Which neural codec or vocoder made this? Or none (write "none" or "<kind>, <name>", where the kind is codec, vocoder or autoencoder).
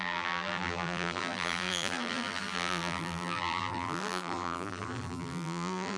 vocoder, BigVGAN v2